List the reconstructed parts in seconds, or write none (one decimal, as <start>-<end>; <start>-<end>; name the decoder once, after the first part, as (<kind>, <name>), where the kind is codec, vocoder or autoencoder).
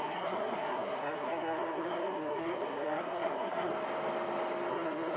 0.0-3.7 (codec, SNAC); 4.7-5.2